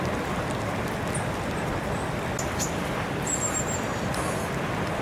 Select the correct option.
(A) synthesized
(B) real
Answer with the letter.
B